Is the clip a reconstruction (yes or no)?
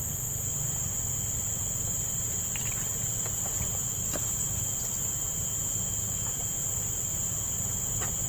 no